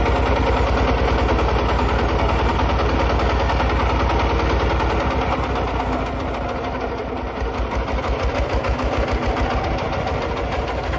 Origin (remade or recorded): recorded